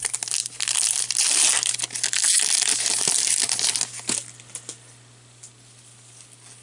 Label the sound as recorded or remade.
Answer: recorded